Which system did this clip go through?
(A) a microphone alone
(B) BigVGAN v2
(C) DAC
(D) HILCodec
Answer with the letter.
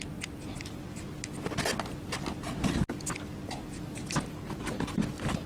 A